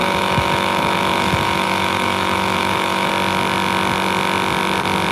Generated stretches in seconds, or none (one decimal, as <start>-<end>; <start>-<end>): 0.0-3.1